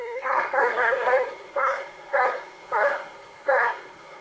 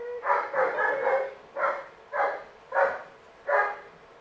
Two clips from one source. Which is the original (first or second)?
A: second